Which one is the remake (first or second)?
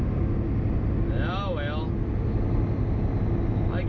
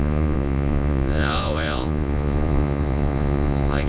second